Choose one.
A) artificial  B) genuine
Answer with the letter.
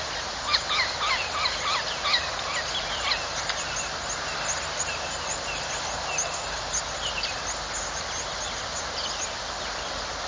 B